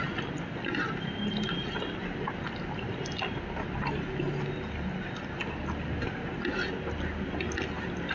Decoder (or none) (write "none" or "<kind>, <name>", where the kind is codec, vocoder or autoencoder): none